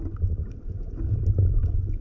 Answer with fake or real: real